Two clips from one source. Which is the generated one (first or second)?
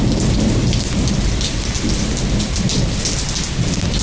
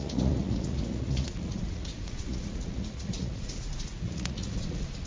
second